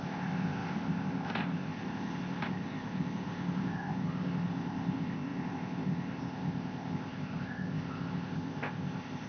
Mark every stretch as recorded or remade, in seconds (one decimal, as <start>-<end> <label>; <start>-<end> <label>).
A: 0.0-9.3 remade